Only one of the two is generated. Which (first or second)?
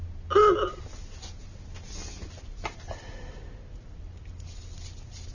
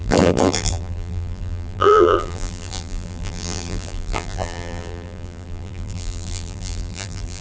second